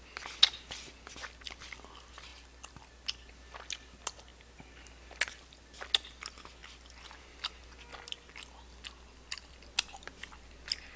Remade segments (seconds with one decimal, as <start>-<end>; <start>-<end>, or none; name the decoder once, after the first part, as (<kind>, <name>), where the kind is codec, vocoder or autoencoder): none